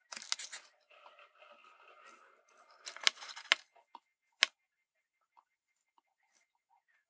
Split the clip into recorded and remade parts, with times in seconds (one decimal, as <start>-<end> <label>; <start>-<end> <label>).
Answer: 0.0-7.1 recorded